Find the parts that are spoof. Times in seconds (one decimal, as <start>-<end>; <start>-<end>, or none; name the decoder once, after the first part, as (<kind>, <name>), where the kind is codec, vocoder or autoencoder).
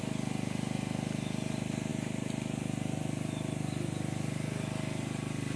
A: none